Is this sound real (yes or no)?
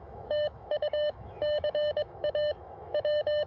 no